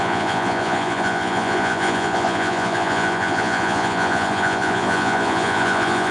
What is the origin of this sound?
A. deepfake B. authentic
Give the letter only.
A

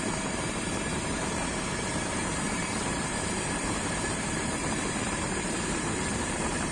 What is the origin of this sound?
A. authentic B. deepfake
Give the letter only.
B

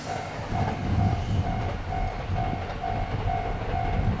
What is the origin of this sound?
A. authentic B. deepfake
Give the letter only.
A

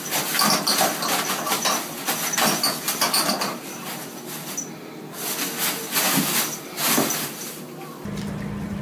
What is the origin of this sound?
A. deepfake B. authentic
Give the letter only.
B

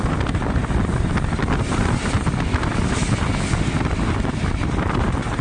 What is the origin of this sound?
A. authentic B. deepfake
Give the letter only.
A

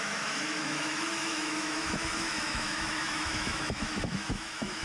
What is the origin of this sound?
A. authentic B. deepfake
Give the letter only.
B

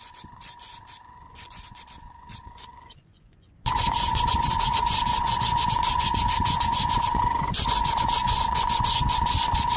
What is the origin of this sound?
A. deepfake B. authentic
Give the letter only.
A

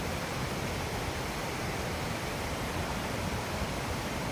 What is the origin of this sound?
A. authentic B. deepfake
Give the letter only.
B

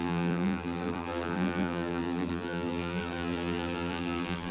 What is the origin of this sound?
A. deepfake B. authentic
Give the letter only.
A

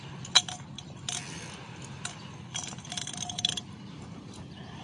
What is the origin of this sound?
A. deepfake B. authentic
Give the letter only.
B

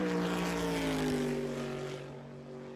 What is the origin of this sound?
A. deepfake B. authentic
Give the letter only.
B